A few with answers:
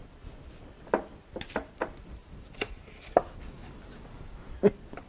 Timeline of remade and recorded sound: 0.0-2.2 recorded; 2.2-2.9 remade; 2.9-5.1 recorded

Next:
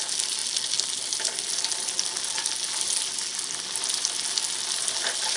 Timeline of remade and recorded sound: 0.0-5.4 recorded

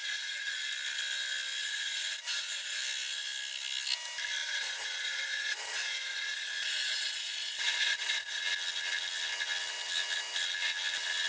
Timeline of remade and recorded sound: 0.0-0.7 remade; 0.7-1.6 recorded; 1.6-2.8 remade; 2.8-4.4 recorded; 4.4-8.4 remade; 8.4-11.3 recorded

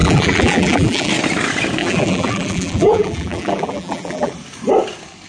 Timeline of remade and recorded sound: 0.0-1.1 remade; 1.1-1.8 recorded; 1.8-4.3 remade; 4.3-5.3 recorded